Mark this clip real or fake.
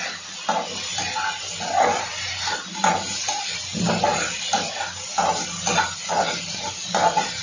real